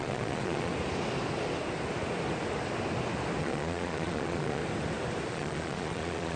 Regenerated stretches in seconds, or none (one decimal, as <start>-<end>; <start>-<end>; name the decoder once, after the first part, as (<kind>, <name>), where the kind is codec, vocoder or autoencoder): 0.0-0.7 (vocoder, Vocos); 3.4-4.6; 5.3-6.4

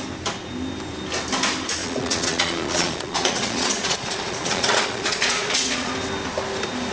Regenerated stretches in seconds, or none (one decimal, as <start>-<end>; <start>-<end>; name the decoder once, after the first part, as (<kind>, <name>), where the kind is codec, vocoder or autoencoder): 1.8-5.9 (vocoder, Vocos)

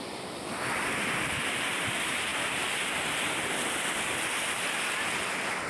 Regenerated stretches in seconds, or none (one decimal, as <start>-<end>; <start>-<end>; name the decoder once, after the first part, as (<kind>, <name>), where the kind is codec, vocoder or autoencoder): none

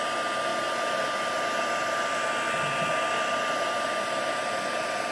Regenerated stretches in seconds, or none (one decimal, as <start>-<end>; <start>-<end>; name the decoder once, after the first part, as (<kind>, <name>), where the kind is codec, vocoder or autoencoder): none

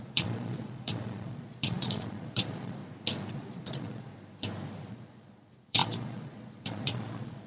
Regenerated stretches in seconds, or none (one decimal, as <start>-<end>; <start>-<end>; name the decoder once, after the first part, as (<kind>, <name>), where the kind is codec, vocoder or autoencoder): 0.0-2.8 (vocoder, Vocos); 3.3-4.1; 4.9-7.5

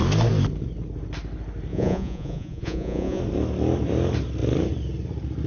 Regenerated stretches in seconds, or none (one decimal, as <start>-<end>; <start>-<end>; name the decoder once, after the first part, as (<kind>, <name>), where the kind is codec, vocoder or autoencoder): 1.7-3.2 (vocoder, Vocos)

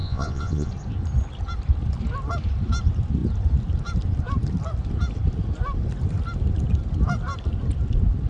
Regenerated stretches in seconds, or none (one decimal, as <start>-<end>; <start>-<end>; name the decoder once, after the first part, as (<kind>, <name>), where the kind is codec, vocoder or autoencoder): 0.0-0.7 (vocoder, Vocos)

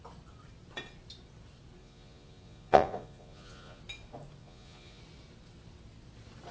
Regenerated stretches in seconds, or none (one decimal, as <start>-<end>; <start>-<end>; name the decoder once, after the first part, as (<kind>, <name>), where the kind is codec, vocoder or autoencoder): 1.8-3.8 (vocoder, Vocos); 4.4-5.0